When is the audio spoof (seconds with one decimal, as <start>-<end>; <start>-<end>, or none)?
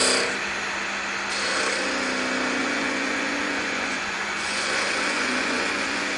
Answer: 2.6-6.2